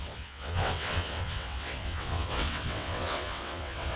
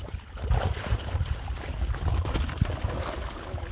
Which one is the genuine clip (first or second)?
second